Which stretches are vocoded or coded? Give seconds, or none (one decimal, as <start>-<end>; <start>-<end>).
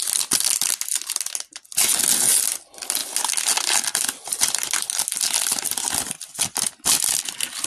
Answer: none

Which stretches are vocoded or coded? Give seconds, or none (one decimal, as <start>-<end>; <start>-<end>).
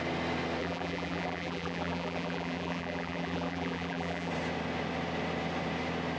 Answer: 0.6-4.3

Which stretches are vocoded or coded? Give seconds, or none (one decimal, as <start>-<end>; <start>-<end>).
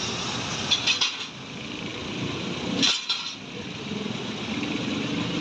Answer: none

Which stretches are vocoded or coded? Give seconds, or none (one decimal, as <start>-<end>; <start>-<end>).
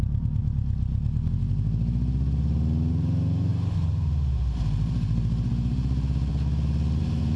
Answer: 0.0-0.4; 2.9-6.3; 7.0-7.4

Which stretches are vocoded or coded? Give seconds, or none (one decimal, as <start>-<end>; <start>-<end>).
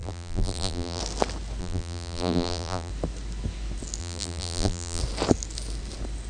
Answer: 0.0-1.0; 1.6-2.9; 4.0-5.0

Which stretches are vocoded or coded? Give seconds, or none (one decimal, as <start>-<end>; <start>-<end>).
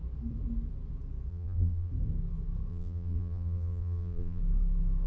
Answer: 1.3-1.9; 2.7-4.4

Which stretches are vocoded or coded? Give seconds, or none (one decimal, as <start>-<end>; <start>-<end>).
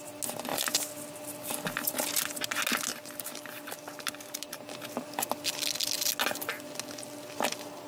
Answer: 0.5-2.2; 2.9-4.7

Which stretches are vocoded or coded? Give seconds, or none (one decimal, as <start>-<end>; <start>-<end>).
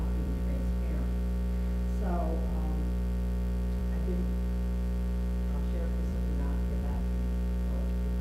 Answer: 0.0-0.7; 6.1-7.0